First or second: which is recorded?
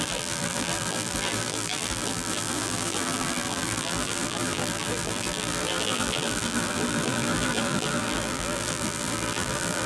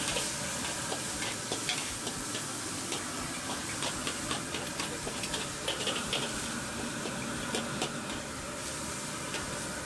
second